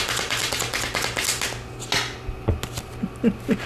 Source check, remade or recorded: recorded